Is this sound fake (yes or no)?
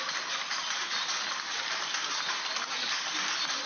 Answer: no